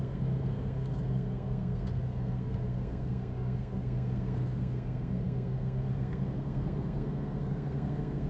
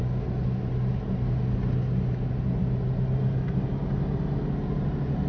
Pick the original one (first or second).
second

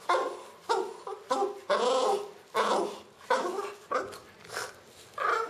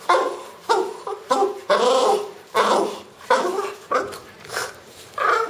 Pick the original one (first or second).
first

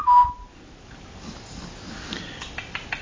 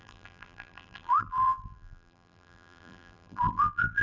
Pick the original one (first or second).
first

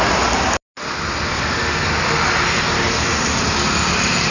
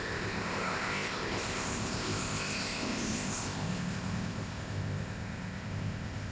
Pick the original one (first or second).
first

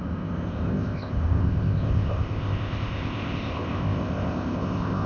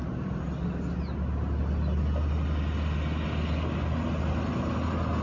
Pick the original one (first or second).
second